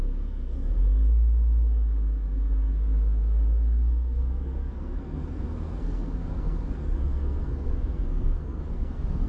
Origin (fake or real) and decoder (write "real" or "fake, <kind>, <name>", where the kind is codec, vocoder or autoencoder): fake, codec, SNAC